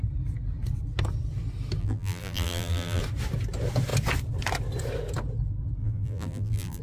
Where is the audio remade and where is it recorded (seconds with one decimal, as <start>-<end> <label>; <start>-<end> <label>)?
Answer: 0.0-1.8 recorded; 1.8-3.0 remade; 3.0-5.8 recorded; 5.8-6.8 remade